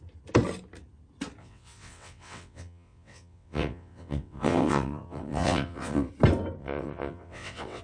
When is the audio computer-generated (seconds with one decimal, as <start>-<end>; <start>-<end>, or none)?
1.4-6.1; 6.6-7.8